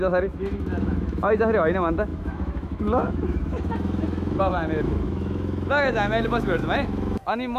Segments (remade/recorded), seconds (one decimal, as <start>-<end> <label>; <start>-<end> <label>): 0.0-7.6 remade